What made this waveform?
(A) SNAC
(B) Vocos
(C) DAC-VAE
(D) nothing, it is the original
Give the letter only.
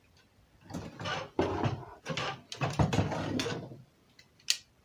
D